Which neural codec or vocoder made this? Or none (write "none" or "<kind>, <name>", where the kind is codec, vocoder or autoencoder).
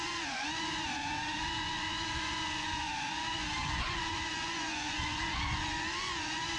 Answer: vocoder, Vocos